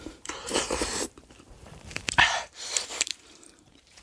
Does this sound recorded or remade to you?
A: remade